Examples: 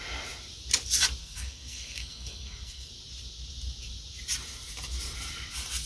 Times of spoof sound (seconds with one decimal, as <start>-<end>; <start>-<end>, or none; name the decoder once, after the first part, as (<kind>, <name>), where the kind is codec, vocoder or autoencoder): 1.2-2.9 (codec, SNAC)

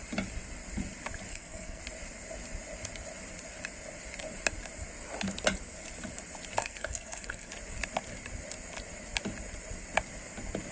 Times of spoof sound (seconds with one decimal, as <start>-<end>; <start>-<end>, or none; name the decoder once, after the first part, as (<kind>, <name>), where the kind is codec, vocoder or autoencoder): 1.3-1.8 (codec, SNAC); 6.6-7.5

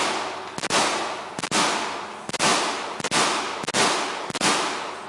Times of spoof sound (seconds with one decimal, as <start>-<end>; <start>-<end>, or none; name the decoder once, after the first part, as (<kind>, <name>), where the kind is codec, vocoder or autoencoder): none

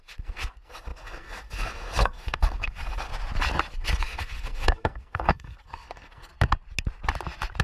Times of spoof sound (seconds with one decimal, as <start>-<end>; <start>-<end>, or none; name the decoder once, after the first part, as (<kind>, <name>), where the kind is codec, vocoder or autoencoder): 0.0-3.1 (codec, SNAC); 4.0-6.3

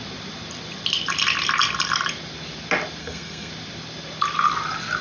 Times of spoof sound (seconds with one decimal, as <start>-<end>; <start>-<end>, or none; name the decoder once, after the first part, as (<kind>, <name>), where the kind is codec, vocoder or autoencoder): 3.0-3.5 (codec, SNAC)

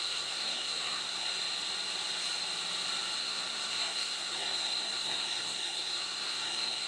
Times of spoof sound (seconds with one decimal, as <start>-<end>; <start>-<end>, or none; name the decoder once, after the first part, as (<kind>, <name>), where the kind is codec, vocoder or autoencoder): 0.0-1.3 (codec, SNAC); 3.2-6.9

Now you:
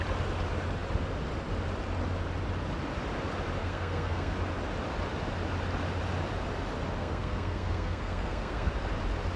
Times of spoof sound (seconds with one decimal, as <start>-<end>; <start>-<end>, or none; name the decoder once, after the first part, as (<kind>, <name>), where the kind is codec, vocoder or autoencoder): 3.6-4.3 (codec, SNAC); 7.0-8.7

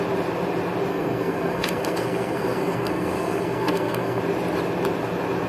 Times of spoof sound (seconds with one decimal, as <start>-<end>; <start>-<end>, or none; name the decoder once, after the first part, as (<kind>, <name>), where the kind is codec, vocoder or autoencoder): 0.9-4.2 (codec, SNAC)